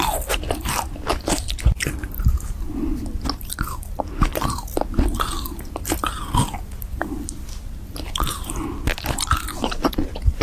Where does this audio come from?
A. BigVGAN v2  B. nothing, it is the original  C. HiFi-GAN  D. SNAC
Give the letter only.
B